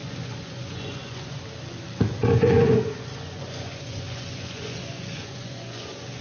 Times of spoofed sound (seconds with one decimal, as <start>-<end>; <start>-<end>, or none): 0.0-1.4; 2.2-6.2

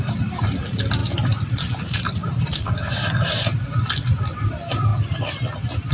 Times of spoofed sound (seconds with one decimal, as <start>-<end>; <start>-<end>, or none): none